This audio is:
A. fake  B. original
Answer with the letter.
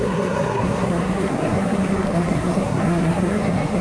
A